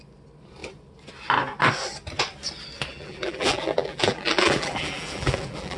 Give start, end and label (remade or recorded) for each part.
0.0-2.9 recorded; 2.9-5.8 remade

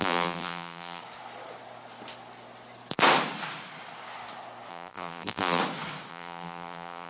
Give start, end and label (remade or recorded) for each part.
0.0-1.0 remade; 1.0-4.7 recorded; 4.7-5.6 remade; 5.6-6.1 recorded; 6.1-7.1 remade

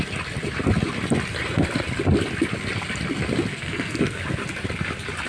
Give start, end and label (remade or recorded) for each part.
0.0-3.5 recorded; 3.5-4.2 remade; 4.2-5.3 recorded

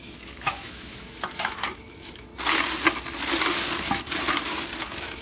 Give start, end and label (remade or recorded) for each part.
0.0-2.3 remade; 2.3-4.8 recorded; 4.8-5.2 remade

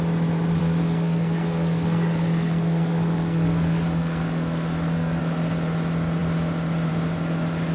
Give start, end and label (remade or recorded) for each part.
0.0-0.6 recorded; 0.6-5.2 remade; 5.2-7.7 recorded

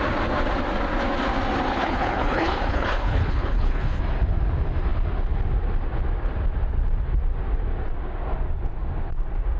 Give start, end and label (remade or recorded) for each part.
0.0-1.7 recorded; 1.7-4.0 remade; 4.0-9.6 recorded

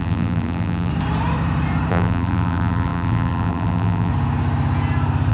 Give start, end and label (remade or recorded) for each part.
0.0-0.9 remade; 0.9-1.9 recorded; 1.9-4.1 remade; 4.1-5.3 recorded